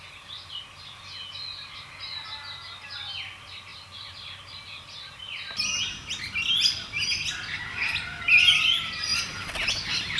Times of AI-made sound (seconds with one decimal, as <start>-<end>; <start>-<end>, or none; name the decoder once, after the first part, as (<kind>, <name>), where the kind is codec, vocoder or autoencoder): none